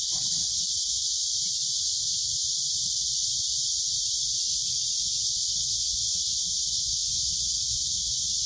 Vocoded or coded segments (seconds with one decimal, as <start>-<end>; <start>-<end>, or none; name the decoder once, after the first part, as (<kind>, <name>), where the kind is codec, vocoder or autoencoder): 0.0-1.0 (vocoder, WaveNeXt); 5.2-8.5